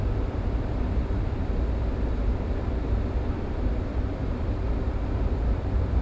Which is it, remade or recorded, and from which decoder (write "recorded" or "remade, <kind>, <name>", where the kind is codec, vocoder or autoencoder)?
remade, vocoder, BigVGAN v2